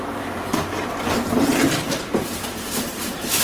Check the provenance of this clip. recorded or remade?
remade